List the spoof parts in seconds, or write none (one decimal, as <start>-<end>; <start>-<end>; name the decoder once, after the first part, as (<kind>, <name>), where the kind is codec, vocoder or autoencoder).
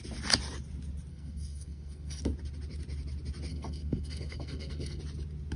1.1-2.2 (codec, SNAC); 3.5-5.0